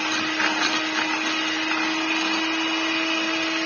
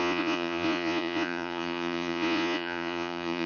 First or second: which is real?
first